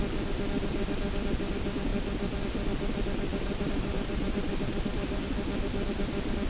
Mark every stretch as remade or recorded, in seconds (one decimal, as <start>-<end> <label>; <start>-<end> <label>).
0.0-3.3 recorded; 3.3-4.5 remade; 4.5-6.5 recorded